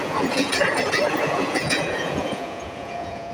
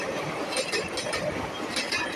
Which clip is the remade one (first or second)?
first